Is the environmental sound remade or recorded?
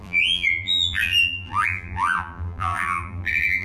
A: remade